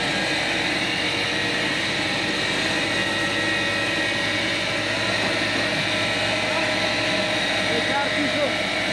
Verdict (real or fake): real